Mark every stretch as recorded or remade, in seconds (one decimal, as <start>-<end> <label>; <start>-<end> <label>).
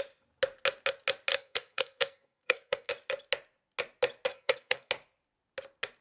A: 0.0-1.3 recorded; 1.3-2.9 remade; 2.9-4.3 recorded; 4.3-4.9 remade; 4.9-6.0 recorded